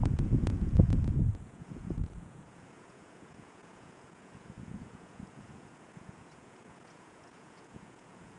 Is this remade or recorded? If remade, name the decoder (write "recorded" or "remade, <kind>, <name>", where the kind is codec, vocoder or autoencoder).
remade, vocoder, Vocos